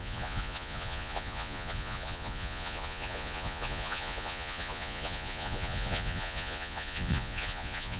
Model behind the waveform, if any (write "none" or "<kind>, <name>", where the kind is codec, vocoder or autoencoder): vocoder, Vocos